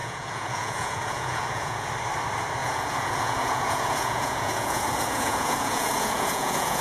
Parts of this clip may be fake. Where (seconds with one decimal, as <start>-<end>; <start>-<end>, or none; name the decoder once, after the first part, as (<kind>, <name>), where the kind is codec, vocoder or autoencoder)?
0.0-1.9 (vocoder, Vocos); 2.6-6.8